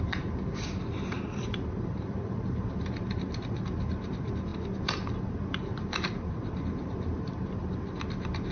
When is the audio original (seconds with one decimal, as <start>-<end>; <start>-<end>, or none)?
none